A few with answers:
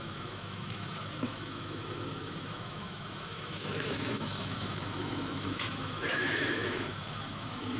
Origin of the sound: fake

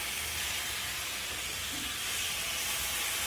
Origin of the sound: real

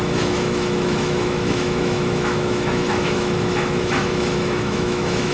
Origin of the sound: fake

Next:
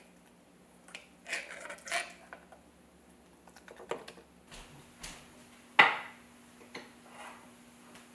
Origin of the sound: real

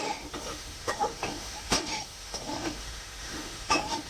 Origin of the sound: fake